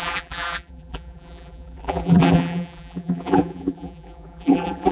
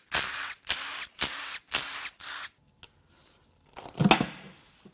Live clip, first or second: second